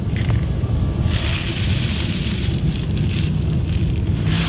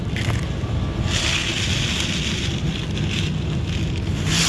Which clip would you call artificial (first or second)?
first